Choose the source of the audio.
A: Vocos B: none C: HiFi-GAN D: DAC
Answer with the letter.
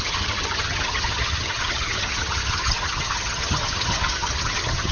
C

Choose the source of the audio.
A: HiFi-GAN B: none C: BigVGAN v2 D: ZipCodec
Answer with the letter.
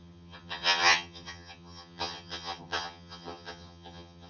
A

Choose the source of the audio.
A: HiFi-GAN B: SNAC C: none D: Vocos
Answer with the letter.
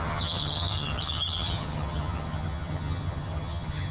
A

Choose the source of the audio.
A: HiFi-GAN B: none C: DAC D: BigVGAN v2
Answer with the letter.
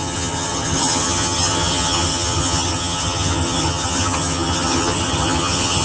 A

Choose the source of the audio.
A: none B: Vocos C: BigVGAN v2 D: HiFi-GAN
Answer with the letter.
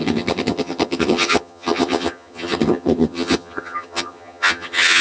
D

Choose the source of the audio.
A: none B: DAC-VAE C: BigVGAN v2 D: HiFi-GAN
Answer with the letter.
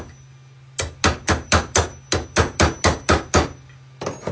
A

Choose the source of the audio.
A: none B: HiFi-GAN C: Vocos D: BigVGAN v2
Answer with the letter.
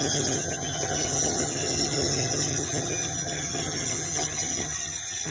B